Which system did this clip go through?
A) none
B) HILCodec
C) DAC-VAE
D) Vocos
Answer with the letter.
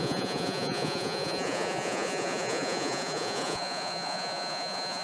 D